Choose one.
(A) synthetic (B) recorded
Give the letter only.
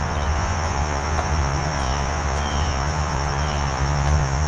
A